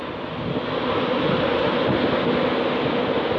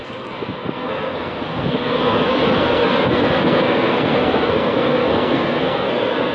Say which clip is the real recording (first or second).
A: first